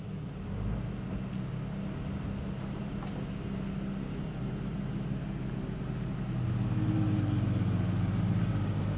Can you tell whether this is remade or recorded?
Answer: recorded